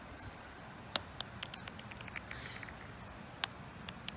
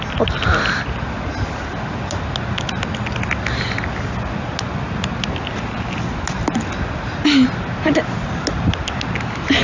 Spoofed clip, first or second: first